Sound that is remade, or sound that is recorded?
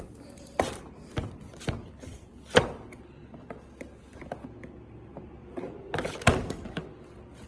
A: recorded